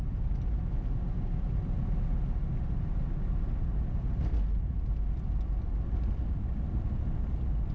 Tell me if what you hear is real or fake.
real